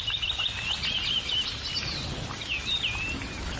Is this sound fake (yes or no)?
no